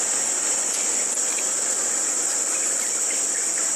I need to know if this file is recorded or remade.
recorded